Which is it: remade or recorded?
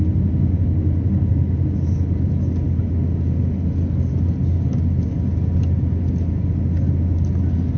recorded